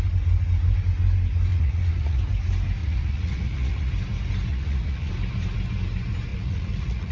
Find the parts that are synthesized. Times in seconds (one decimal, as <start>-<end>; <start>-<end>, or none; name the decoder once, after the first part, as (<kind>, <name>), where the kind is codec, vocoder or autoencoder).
1.5-2.2 (vocoder, Vocos); 2.8-3.9; 4.5-5.1; 6.3-7.1